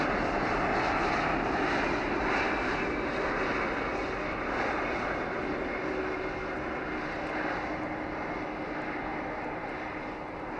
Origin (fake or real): real